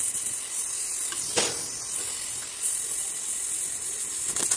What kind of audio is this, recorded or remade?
recorded